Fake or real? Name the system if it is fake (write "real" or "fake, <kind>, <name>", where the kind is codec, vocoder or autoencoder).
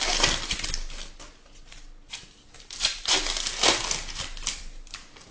real